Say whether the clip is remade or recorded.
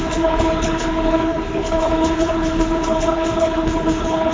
remade